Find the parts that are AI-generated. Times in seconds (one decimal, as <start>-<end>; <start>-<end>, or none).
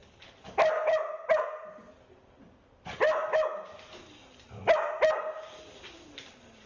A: none